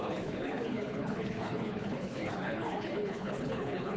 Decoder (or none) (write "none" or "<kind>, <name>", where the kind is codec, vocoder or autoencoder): codec, HILCodec